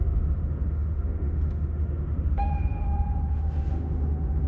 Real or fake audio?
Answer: fake